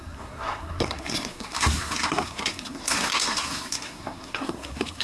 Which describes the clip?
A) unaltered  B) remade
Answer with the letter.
B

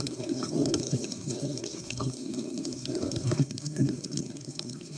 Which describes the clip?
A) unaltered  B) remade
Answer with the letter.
B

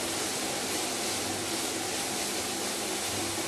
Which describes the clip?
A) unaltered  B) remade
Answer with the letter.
A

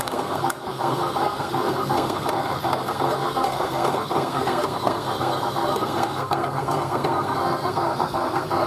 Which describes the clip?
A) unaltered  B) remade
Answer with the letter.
B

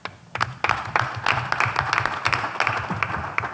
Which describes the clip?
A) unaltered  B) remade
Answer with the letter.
A